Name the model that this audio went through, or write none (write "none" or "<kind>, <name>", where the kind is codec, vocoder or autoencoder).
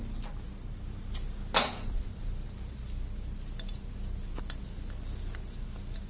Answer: none